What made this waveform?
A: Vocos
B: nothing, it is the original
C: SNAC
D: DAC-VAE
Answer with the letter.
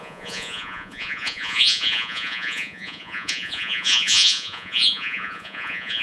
A